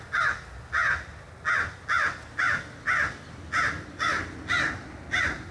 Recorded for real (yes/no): yes